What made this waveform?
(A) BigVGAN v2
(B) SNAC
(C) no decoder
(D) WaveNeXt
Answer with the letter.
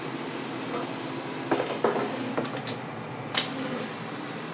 C